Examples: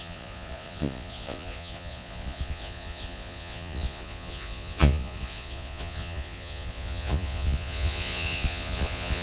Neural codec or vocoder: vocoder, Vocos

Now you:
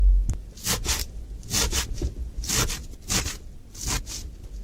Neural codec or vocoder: none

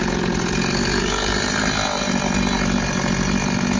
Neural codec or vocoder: none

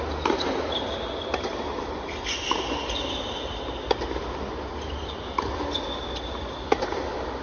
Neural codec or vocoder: none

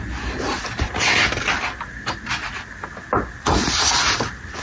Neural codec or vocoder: none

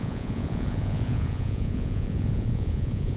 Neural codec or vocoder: vocoder, Vocos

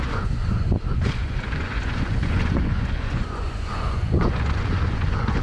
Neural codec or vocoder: vocoder, Vocos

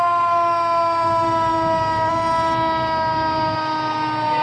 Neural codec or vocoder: none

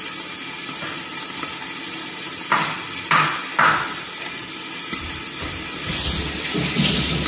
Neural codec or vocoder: none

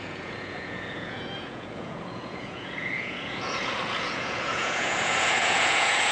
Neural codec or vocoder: vocoder, Vocos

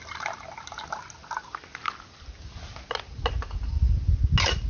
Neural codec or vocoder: none